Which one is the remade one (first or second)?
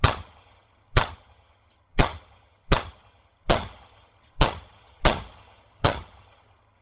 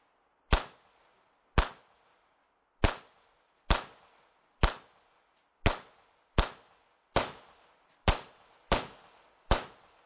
first